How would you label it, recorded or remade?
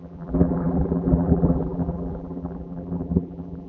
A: remade